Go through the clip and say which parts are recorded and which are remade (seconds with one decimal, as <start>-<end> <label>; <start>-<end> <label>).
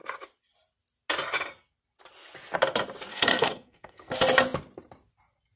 0.0-3.1 recorded; 3.1-4.1 remade; 4.1-5.6 recorded